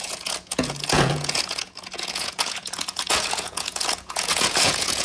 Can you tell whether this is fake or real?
fake